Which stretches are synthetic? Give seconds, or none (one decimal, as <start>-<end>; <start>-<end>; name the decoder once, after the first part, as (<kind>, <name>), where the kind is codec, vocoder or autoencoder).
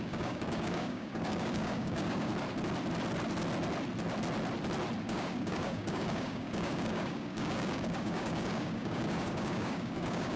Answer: 0.0-2.3 (codec, DAC); 5.0-10.4